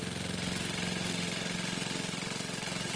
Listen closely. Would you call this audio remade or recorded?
recorded